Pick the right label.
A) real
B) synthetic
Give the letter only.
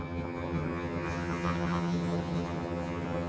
B